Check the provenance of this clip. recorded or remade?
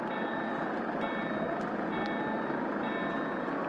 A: recorded